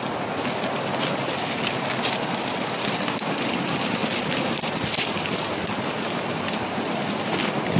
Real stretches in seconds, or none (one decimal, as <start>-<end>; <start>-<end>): 0.0-7.8